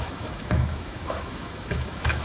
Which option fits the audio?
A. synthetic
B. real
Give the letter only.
A